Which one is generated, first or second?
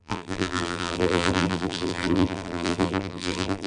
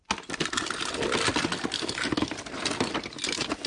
first